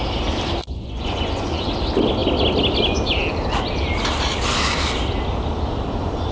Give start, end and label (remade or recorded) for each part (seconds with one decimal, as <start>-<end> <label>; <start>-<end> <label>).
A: 0.0-0.6 recorded; 0.6-1.7 remade; 1.7-6.3 recorded